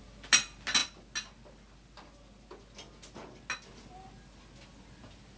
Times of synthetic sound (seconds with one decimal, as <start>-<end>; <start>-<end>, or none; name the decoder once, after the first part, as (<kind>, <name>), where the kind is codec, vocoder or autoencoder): none